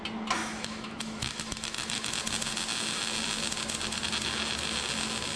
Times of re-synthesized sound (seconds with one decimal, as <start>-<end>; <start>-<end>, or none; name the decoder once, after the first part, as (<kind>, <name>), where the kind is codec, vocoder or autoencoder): 0.4-2.1 (autoencoder, DAC-VAE)